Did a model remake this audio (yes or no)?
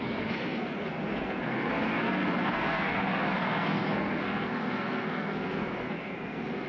yes